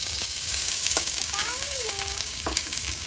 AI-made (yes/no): yes